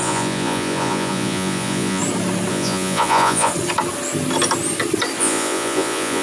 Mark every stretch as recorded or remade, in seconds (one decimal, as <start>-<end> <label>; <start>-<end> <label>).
0.0-2.0 remade; 2.0-2.5 recorded; 2.5-3.5 remade; 3.5-5.2 recorded; 5.2-6.2 remade